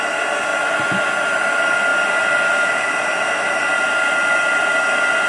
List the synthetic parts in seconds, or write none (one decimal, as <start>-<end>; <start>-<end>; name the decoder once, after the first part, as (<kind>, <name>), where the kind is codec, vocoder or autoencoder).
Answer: none